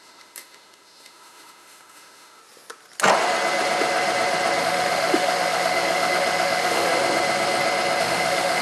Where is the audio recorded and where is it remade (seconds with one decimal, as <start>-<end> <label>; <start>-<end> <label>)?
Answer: 0.0-2.4 remade; 2.4-4.6 recorded; 4.6-6.9 remade; 6.9-8.0 recorded; 8.0-8.6 remade

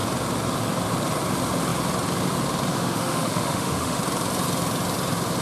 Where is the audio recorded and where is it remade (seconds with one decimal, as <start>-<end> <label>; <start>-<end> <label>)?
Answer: 0.0-2.7 recorded; 2.7-4.0 remade; 4.0-5.4 recorded

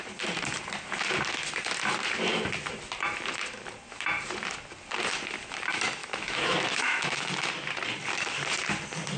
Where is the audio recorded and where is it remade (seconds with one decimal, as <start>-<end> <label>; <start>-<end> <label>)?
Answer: 0.0-6.0 recorded; 6.0-7.5 remade; 7.5-9.2 recorded

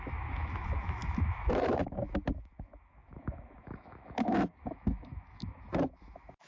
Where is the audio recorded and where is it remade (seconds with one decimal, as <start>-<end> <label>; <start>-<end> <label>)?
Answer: 0.0-6.5 remade

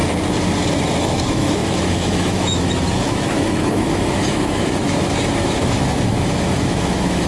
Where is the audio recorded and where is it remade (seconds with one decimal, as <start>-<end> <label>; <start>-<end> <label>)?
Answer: 0.0-1.0 recorded; 1.0-7.3 remade